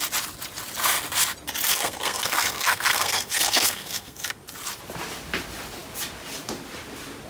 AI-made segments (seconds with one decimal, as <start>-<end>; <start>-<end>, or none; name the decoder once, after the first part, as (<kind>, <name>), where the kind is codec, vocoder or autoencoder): 1.7-4.4 (codec, SNAC)